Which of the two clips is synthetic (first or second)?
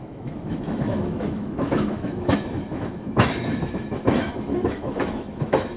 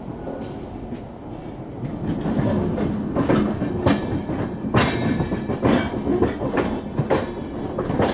first